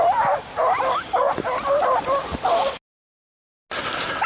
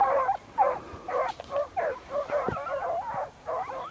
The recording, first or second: first